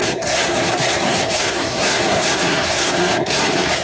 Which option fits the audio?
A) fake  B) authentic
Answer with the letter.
A